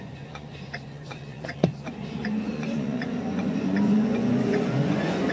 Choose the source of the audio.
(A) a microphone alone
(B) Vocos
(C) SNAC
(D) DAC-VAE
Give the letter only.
B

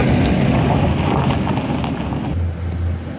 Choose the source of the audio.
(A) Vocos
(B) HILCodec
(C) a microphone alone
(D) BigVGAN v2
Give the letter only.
C